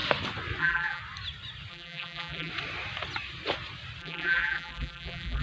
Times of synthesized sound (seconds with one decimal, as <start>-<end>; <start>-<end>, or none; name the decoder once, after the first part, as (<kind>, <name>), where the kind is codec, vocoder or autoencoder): 0.6-1.0 (vocoder, BigVGAN v2); 1.7-2.5; 4.0-5.4

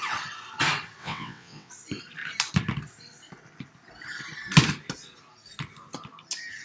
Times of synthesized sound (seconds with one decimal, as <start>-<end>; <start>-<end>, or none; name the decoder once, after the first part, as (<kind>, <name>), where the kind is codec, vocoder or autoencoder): 1.0-1.7 (vocoder, WaveNeXt)

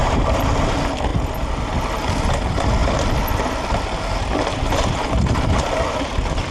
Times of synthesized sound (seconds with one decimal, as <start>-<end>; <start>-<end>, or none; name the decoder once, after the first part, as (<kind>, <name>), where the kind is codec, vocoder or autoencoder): 0.0-0.5 (vocoder, BigVGAN v2); 1.1-1.6